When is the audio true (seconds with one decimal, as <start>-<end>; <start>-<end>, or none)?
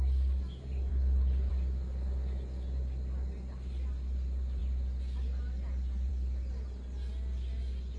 0.0-0.9; 1.5-8.0